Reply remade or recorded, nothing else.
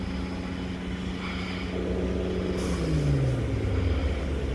recorded